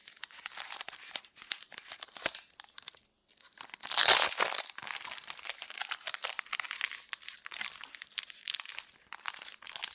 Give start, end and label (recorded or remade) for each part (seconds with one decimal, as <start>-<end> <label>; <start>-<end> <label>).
0.0-2.5 remade; 2.5-9.9 recorded